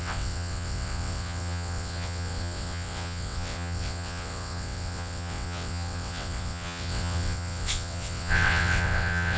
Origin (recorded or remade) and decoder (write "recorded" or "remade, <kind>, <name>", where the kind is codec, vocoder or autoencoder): remade, vocoder, WaveNeXt